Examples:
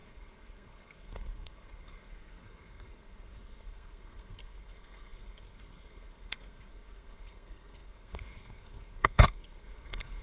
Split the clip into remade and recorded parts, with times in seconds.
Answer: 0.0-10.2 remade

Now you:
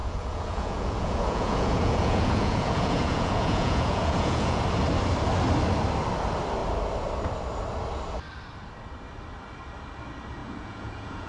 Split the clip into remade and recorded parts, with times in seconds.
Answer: 0.0-4.6 remade; 4.6-10.4 recorded; 10.4-11.3 remade

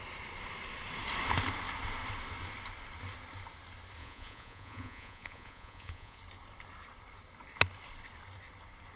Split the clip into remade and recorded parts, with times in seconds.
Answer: 0.0-4.0 recorded; 4.0-6.2 remade; 6.2-9.0 recorded

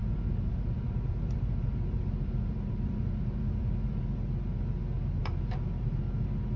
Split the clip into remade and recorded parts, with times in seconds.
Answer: 0.0-4.0 remade; 4.0-5.2 recorded; 5.2-6.0 remade; 6.0-6.6 recorded

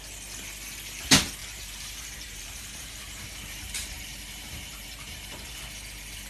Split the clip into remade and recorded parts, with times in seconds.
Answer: 0.0-1.4 recorded; 1.4-5.1 remade; 5.1-6.3 recorded

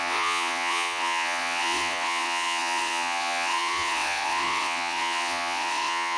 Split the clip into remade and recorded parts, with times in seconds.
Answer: 0.0-6.2 remade